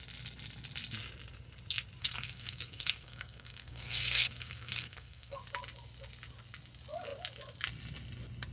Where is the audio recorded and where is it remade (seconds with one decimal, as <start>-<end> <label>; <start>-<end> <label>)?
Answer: 0.0-2.0 recorded; 2.0-5.4 remade; 5.4-8.5 recorded